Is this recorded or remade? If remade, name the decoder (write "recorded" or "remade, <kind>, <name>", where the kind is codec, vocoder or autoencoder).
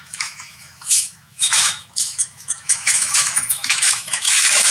remade, autoencoder, DAC-VAE